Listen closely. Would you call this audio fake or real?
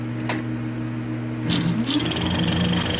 real